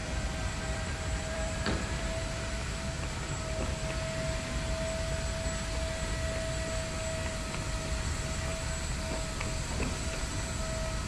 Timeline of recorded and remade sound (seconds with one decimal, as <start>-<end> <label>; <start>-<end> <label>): 0.0-3.4 remade; 3.4-11.1 recorded